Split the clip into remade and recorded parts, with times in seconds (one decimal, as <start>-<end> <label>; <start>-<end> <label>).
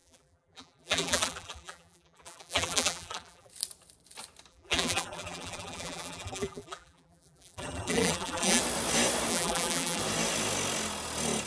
0.0-3.5 remade; 3.5-4.5 recorded; 4.5-8.6 remade; 8.6-9.3 recorded; 9.3-10.0 remade; 10.0-11.5 recorded